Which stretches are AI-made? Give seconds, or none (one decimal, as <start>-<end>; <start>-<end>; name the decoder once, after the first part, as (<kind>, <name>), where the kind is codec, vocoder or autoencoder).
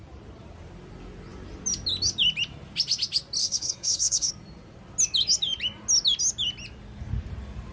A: 3.4-4.3 (codec, SNAC)